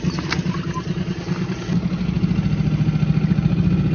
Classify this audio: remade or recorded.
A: recorded